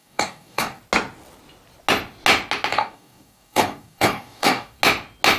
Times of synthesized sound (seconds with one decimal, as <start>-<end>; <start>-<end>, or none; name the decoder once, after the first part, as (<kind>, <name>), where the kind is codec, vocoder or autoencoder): 0.0-0.8 (codec, DAC); 2.7-4.8